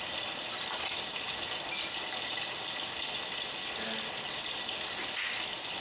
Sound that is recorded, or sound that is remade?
recorded